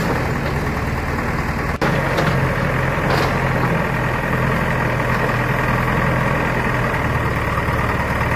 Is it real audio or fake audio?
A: real